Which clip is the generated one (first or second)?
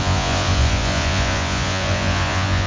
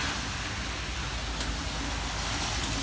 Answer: first